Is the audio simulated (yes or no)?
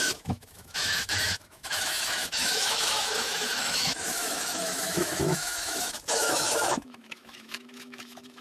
yes